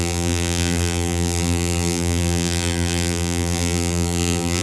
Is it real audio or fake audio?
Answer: fake